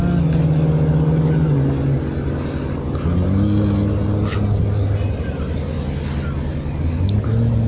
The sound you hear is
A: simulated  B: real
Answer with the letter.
B